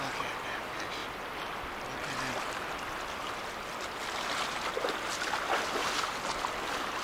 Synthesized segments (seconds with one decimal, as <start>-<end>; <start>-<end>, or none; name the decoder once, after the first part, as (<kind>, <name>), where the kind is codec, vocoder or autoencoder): none